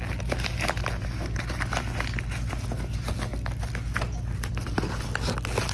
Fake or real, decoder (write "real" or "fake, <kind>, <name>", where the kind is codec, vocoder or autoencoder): real